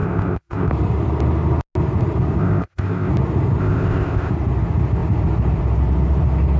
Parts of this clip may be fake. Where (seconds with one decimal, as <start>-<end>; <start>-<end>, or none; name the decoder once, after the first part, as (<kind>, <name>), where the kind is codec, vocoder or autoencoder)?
0.0-0.7 (codec, ZipCodec); 2.4-3.1; 3.6-4.3